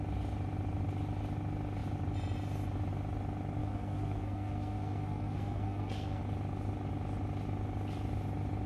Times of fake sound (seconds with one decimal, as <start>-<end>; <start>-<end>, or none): 3.6-6.2